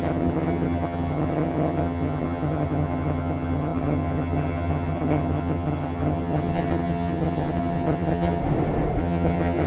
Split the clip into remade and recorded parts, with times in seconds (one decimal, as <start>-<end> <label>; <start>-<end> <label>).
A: 0.0-8.4 remade; 8.4-9.0 recorded; 9.0-9.7 remade